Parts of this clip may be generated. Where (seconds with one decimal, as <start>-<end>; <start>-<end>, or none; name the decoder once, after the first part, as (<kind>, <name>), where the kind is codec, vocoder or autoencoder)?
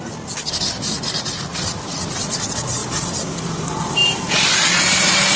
1.5-2.2 (vocoder, BigVGAN v2); 4.0-4.5